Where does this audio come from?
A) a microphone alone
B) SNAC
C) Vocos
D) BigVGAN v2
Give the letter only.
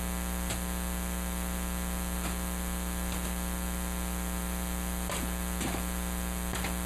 A